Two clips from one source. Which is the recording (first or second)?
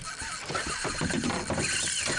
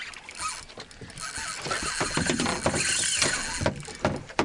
second